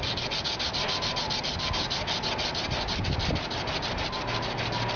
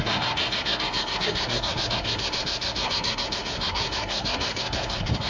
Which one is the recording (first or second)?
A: first